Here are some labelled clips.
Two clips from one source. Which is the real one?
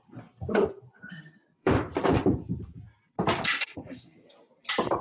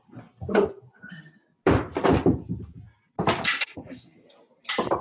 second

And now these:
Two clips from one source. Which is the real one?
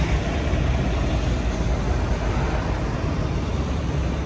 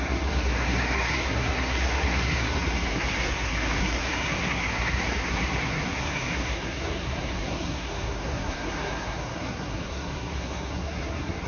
first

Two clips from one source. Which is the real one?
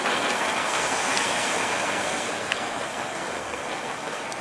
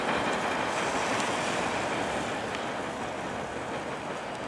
second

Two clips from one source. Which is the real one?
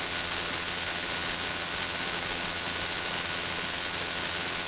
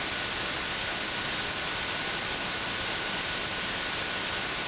second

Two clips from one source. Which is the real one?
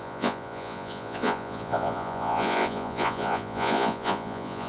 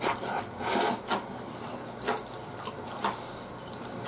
second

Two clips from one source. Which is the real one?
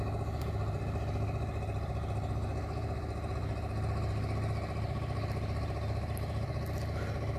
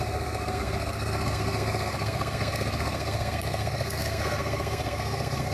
first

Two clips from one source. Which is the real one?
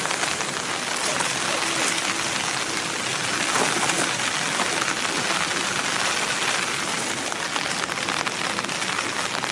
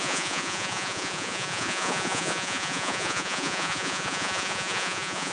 first